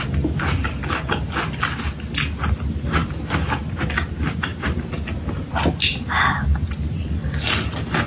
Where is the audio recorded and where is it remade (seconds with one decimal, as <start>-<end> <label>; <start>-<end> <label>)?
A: 0.0-8.1 recorded